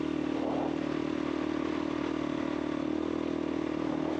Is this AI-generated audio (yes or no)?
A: no